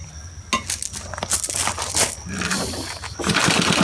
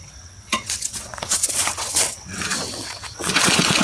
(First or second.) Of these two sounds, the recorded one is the first